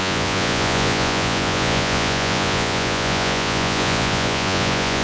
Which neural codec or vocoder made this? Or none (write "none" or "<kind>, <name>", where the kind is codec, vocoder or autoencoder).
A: vocoder, Vocos